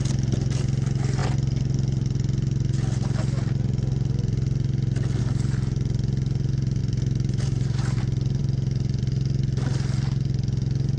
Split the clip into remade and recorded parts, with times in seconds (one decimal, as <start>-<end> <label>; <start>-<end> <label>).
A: 0.0-6.8 recorded; 6.8-8.0 remade; 8.0-11.0 recorded